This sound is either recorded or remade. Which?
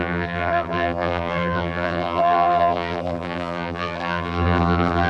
remade